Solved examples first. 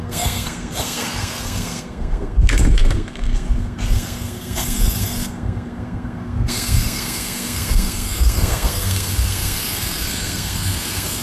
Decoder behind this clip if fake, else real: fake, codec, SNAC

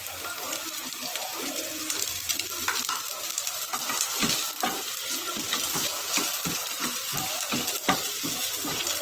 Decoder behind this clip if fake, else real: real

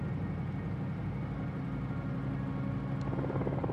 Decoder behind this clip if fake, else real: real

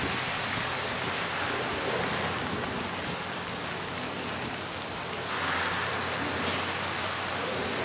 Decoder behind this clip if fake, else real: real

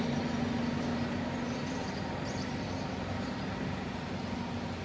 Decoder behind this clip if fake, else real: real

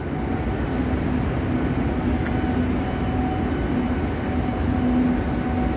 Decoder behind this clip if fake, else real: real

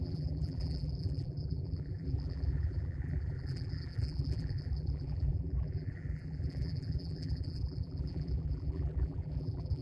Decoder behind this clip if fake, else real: fake, vocoder, BigVGAN v2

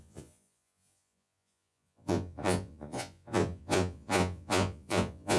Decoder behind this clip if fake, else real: fake, vocoder, Vocos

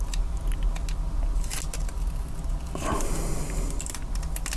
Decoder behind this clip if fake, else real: real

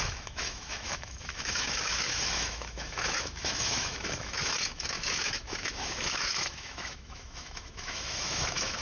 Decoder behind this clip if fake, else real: fake, autoencoder, DAC-VAE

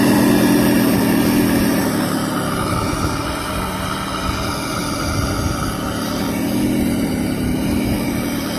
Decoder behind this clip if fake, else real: real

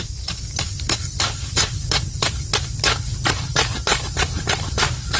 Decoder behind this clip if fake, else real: fake, vocoder, BigVGAN v2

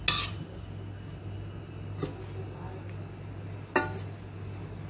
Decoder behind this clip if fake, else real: real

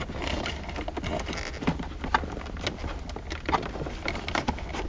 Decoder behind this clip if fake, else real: real